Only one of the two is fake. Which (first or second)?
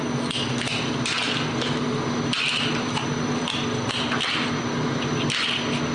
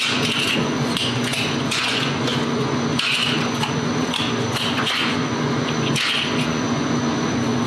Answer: second